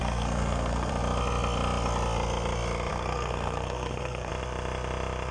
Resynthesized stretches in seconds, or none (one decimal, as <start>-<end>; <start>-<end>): 0.0-0.9; 2.9-4.3